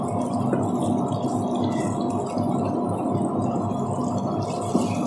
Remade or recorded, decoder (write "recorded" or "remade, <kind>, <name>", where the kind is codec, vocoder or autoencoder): recorded